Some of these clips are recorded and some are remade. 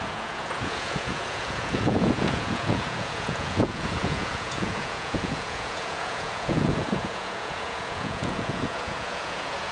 remade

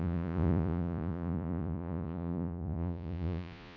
remade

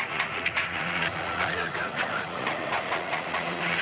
remade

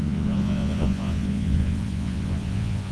remade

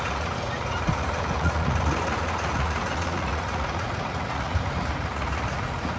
remade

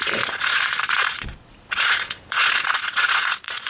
remade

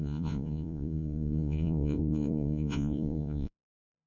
remade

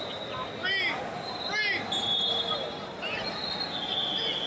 recorded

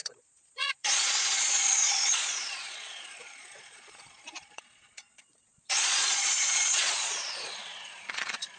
remade